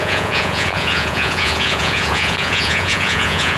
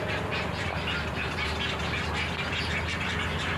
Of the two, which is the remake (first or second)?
first